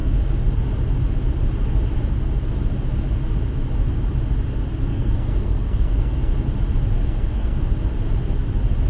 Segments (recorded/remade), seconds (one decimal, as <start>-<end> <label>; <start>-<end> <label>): 0.0-4.9 recorded; 4.9-6.3 remade; 6.3-7.0 recorded; 7.0-7.6 remade; 7.6-8.9 recorded